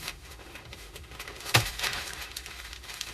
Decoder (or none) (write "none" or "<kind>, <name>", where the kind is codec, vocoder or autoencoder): autoencoder, DAC-VAE